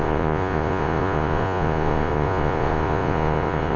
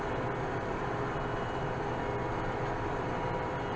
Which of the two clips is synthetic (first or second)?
first